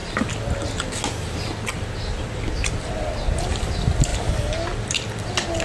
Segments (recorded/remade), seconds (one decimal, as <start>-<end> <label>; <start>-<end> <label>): 0.0-5.6 recorded